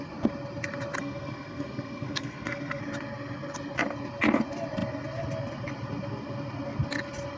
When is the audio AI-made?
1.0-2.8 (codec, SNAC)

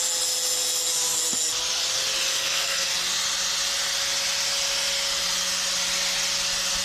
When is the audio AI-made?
2.3-2.9 (codec, SNAC)

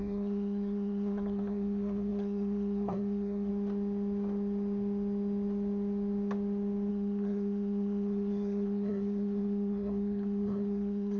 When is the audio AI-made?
0.0-3.5 (codec, SNAC); 6.9-11.2

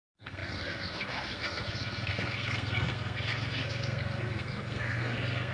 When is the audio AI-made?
0.0-5.5 (codec, SNAC)

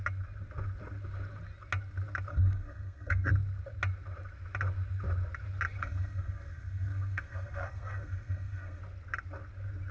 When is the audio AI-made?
2.3-3.3 (codec, SNAC); 5.8-8.8

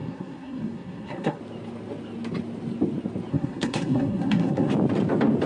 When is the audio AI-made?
0.0-1.4 (codec, SNAC); 3.3-4.7